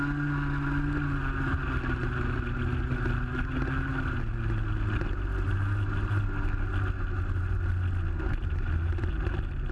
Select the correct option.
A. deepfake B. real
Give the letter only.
B